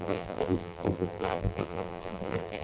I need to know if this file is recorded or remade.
remade